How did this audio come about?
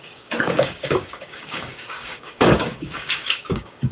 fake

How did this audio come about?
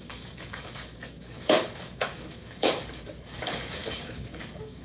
fake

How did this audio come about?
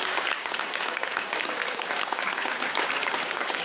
fake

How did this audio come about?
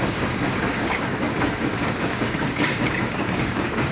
fake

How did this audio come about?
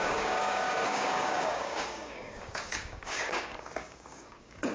fake